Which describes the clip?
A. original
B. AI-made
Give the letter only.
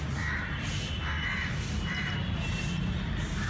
A